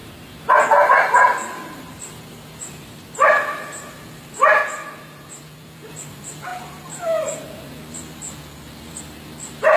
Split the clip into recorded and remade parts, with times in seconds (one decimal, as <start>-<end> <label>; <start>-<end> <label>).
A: 0.0-0.9 recorded; 0.9-4.6 remade; 4.6-5.9 recorded; 5.9-6.5 remade; 6.5-9.0 recorded; 9.0-9.8 remade